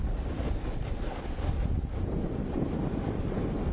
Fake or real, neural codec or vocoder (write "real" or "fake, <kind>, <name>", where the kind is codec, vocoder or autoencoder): real